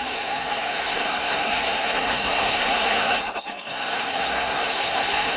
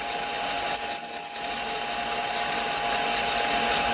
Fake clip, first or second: first